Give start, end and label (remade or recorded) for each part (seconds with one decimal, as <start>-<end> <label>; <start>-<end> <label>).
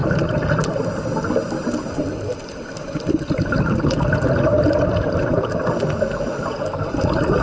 0.0-7.4 recorded